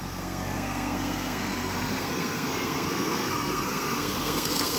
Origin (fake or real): fake